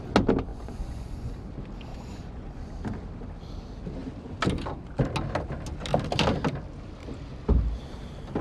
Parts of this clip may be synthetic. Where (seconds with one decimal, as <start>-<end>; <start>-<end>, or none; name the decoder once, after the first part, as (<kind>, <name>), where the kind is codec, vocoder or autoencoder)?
0.5-1.3 (vocoder, Vocos); 1.9-2.7